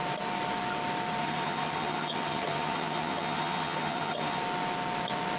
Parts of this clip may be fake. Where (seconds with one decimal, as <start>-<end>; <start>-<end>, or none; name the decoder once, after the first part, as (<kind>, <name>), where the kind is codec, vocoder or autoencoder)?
1.2-4.4 (vocoder, HiFi-GAN)